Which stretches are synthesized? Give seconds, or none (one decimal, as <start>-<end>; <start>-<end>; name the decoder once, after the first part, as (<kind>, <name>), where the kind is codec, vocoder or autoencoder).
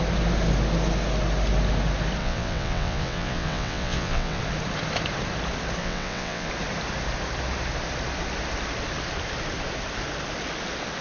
2.2-4.4 (vocoder, WaveNeXt); 5.8-6.5